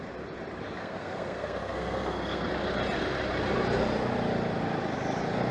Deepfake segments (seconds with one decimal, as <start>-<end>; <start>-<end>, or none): 0.8-2.5